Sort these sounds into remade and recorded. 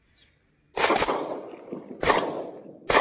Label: recorded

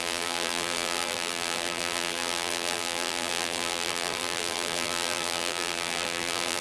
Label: remade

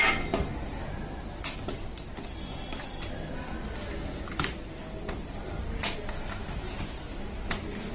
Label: recorded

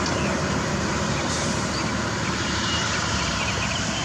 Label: remade